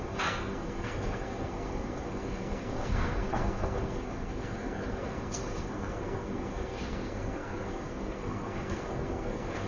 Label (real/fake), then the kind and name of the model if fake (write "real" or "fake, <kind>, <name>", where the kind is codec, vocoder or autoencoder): fake, codec, SNAC